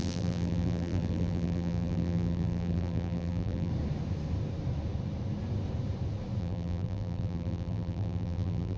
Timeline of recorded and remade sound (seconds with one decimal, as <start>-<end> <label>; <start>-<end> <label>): 0.0-3.7 remade; 3.7-6.4 recorded; 6.4-8.8 remade